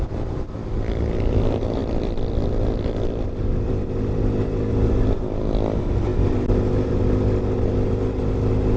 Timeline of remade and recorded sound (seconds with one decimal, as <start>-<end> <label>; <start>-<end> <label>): 0.0-6.1 recorded; 6.1-7.0 remade; 7.0-8.8 recorded